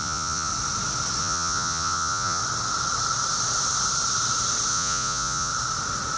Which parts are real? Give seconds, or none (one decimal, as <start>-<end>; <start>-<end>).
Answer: 0.5-1.2; 2.4-4.7; 5.5-6.2

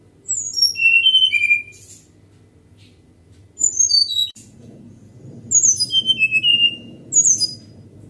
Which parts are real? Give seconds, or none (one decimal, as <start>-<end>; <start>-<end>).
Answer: 0.0-0.8; 1.8-4.0; 5.0-6.5; 7.1-8.1

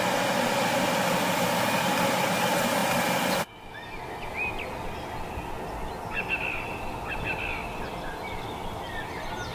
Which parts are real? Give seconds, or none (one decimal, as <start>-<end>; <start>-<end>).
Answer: 0.0-9.5

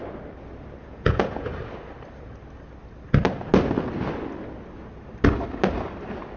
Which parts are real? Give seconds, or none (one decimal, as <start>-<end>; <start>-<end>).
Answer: 0.0-0.8; 1.5-6.4